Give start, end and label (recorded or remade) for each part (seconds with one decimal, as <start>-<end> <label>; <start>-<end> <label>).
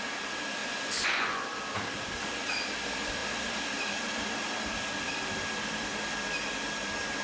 0.0-0.6 recorded; 0.6-1.4 remade; 1.4-7.2 recorded